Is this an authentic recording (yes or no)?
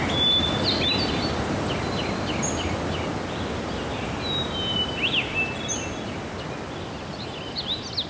yes